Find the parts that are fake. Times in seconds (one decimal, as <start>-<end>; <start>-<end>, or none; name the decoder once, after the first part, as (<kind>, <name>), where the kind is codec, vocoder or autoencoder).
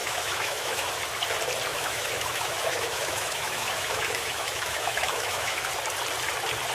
0.0-0.9 (autoencoder, DAC-VAE); 1.7-5.7